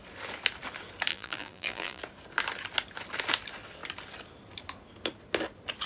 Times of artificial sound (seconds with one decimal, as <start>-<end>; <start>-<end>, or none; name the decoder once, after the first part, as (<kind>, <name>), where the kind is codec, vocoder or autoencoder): 1.1-2.0 (vocoder, BigVGAN v2)